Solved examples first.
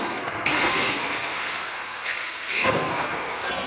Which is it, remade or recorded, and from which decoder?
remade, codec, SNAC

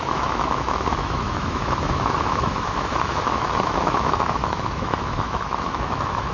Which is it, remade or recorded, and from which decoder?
remade, autoencoder, DAC-VAE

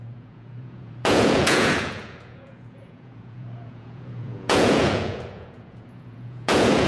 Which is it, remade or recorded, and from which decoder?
remade, vocoder, Vocos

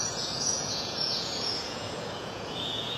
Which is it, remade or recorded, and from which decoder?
remade, vocoder, Vocos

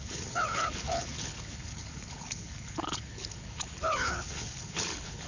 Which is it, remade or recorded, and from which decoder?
remade, codec, HILCodec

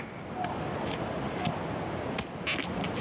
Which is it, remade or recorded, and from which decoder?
recorded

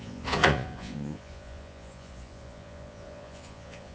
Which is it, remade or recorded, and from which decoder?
remade, vocoder, Vocos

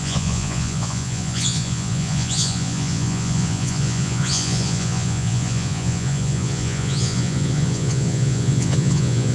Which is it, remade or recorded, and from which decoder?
remade, vocoder, Vocos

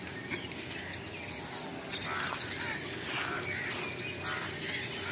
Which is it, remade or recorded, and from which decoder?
recorded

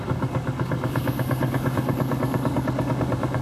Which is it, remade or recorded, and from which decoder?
remade, codec, DAC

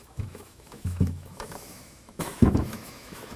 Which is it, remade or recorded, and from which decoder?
remade, autoencoder, DAC-VAE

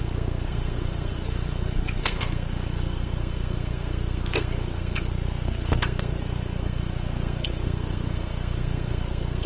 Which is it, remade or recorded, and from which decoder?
remade, codec, SNAC